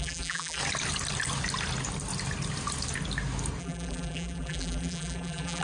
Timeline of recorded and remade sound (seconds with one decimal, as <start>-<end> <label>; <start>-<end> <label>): 0.0-0.6 remade; 0.6-3.6 recorded; 3.6-5.6 remade